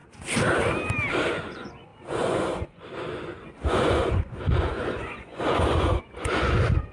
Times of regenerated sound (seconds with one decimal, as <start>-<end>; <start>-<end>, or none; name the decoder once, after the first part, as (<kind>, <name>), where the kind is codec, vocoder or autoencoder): 1.3-6.9 (vocoder, Vocos)